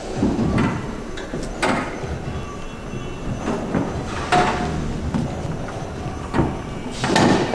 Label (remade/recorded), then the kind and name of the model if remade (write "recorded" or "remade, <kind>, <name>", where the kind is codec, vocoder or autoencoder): recorded